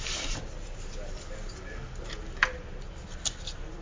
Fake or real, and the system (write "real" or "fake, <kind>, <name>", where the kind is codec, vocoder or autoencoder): real